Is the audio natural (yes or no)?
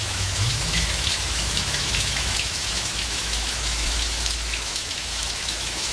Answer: no